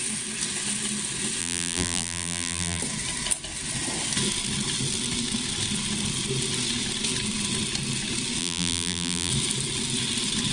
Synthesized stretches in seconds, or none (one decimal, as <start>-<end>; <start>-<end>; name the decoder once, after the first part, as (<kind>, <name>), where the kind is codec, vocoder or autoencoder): 1.4-2.8 (vocoder, BigVGAN v2); 8.4-9.3